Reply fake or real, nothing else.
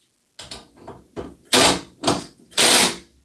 real